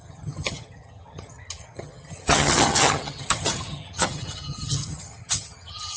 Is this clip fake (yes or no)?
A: yes